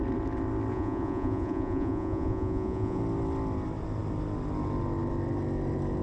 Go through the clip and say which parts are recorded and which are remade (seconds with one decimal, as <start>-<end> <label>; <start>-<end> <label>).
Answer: 0.0-0.7 recorded; 0.7-3.0 remade; 3.0-6.0 recorded